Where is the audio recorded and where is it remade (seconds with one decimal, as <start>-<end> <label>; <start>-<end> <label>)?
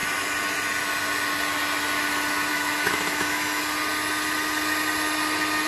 0.0-2.5 recorded; 2.5-3.6 remade; 3.6-5.7 recorded